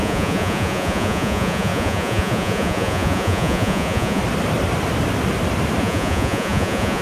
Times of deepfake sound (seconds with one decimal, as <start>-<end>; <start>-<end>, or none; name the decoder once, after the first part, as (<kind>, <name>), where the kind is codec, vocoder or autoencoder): 0.0-4.2 (vocoder, Vocos); 5.8-7.0

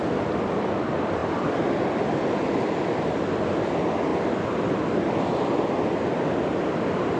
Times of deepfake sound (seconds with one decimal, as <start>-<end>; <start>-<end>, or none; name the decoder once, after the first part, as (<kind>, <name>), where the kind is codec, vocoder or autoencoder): none